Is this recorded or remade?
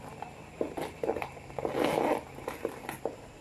recorded